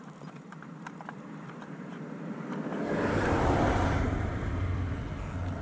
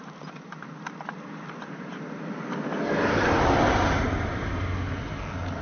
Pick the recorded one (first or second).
second